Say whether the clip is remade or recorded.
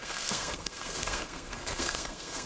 remade